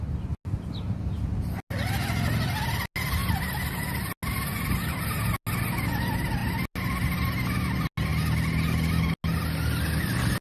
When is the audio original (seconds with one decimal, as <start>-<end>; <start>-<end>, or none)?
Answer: 0.0-10.4